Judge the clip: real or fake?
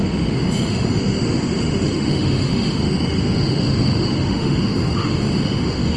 fake